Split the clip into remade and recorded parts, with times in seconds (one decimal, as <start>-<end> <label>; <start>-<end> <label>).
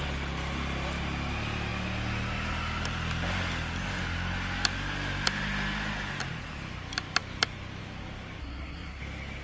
0.0-8.4 recorded; 8.4-9.0 remade; 9.0-9.4 recorded